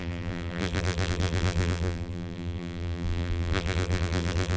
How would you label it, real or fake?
fake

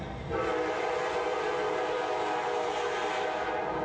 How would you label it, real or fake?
real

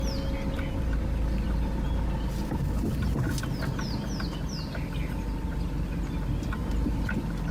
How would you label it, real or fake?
real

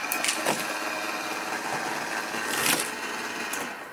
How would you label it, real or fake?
fake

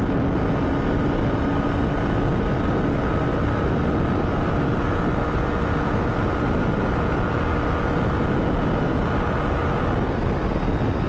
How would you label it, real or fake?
real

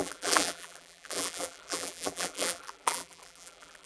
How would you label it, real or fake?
fake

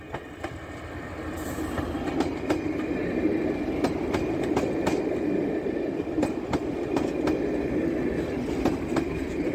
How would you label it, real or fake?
real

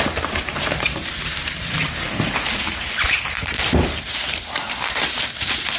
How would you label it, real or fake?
fake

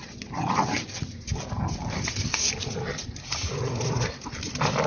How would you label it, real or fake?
fake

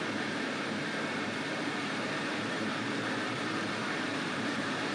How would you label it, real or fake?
fake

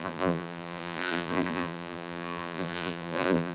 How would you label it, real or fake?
fake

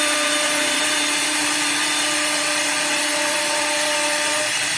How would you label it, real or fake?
fake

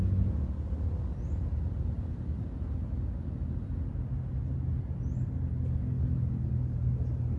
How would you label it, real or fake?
real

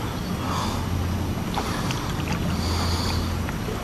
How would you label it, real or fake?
real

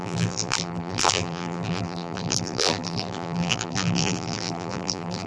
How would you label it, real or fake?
fake